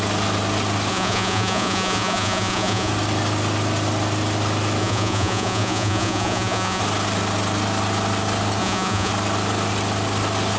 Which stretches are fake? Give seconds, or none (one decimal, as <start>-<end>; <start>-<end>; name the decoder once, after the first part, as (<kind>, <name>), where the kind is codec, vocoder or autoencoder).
0.9-2.9 (vocoder, Vocos); 4.8-6.8; 8.6-9.1